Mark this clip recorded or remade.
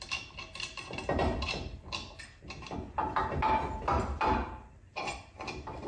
recorded